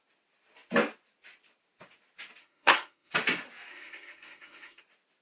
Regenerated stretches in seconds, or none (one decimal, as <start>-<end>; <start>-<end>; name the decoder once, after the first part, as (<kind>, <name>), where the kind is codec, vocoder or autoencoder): 2.4-3.1 (codec, SNAC); 3.7-4.8